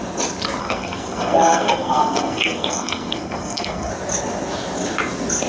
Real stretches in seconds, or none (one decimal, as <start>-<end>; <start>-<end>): 0.0-0.6; 3.9-5.5